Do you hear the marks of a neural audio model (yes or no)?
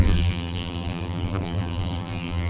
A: yes